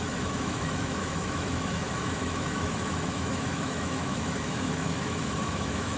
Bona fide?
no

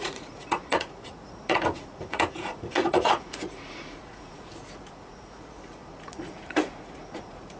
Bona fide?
no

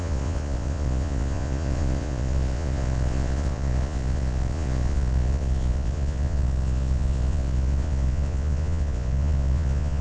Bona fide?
no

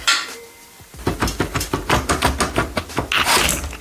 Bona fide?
yes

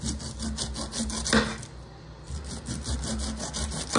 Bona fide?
yes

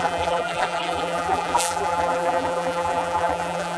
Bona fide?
no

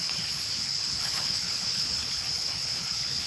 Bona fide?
no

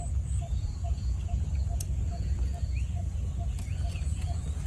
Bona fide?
no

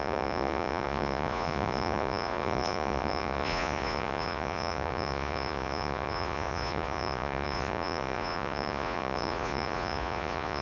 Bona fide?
no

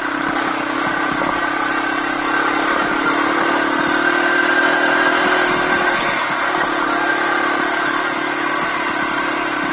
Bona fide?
yes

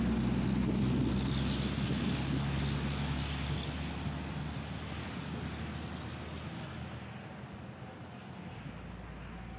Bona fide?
yes